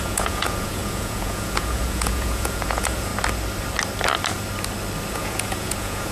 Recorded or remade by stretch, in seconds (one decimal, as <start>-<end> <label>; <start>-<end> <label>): 0.0-3.1 remade; 3.1-5.1 recorded; 5.1-6.1 remade